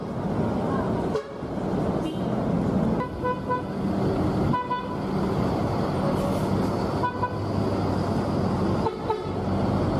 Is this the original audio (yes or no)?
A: yes